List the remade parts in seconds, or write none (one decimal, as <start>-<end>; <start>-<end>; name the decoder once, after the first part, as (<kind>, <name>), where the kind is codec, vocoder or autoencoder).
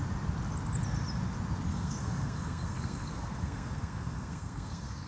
1.7-5.1 (codec, SNAC)